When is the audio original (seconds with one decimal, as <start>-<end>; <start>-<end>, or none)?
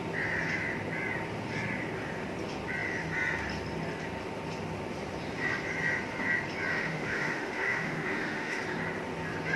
0.0-6.7; 8.6-9.6